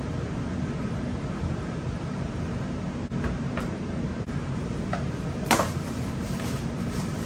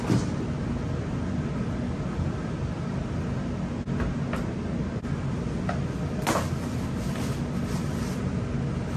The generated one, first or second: first